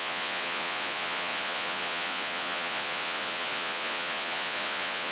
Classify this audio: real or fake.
fake